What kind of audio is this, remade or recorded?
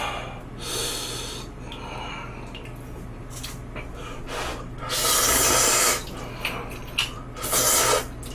recorded